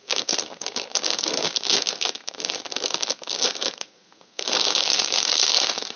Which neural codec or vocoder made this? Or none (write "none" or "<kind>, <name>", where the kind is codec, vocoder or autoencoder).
codec, SNAC